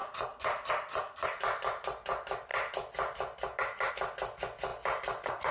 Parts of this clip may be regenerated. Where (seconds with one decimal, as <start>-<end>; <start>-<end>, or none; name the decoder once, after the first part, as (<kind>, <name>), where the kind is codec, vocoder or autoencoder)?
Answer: 4.7-5.5 (vocoder, BigVGAN v2)

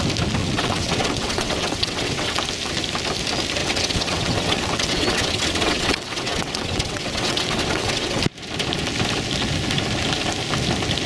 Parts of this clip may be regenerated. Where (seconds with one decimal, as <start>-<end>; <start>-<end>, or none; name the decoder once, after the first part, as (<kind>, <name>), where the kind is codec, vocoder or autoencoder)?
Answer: 0.4-2.4 (vocoder, WaveNeXt); 3.6-8.2

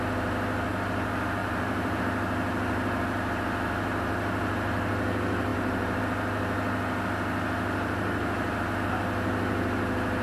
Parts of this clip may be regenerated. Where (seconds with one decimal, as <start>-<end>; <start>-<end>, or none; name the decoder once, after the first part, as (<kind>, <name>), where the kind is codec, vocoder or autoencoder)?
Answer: 1.4-2.0 (vocoder, BigVGAN v2); 5.5-6.0

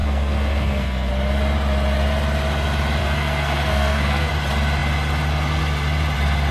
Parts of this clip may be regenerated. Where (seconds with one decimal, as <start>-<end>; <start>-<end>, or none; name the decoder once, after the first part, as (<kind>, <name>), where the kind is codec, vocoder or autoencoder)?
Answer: 0.0-1.1 (codec, SNAC); 3.0-4.3